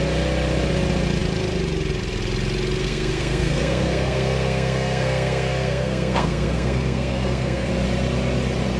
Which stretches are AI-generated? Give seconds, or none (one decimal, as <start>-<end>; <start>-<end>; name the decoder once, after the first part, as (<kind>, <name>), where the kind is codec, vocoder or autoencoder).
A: 2.8-7.7 (codec, SNAC)